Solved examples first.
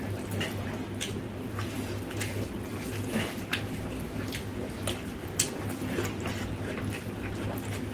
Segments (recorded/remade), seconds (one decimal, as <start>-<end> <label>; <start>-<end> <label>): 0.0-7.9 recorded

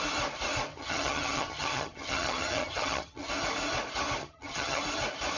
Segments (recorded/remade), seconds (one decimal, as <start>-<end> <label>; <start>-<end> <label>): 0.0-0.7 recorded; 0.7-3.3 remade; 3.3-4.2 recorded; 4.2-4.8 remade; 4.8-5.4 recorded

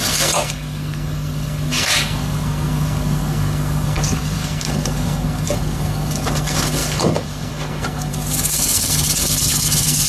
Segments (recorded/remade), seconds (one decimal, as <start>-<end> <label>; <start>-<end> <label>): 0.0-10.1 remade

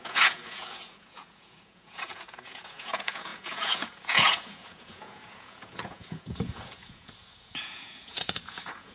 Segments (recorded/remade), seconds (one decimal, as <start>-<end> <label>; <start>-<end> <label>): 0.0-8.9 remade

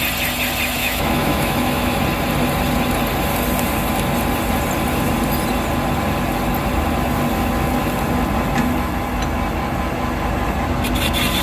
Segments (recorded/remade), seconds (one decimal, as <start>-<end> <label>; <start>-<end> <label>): 0.0-0.8 recorded; 0.8-2.0 remade; 2.0-11.4 recorded

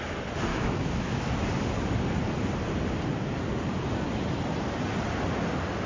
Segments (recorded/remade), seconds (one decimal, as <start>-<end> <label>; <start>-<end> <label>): 0.0-0.5 recorded; 0.5-1.4 remade; 1.4-5.9 recorded

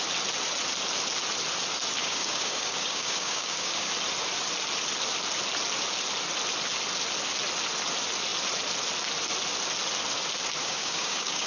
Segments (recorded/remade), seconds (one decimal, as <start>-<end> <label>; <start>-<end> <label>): 0.0-2.0 recorded; 2.0-3.9 remade; 3.9-10.6 recorded; 10.6-11.5 remade

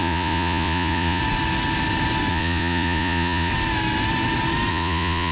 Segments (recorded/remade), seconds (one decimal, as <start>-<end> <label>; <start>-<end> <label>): 0.0-1.2 remade; 1.2-2.3 recorded; 2.3-3.5 remade; 3.5-4.7 recorded; 4.7-5.3 remade